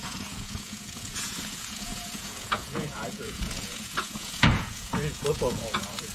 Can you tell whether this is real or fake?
fake